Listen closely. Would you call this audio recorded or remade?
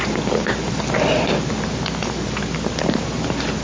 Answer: recorded